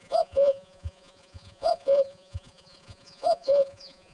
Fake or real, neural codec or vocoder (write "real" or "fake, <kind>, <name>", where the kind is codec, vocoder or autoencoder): fake, vocoder, Vocos